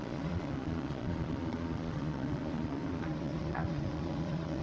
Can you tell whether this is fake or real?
fake